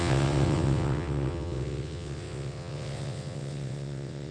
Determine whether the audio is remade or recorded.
remade